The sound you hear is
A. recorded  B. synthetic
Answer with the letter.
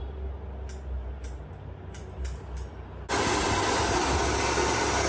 A